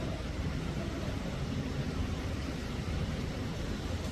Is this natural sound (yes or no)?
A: no